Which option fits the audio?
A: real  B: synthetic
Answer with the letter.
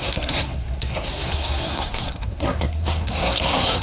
B